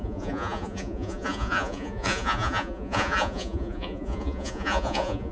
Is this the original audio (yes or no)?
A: no